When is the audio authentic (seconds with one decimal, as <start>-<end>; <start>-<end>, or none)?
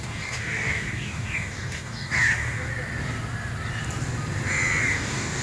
2.7-4.8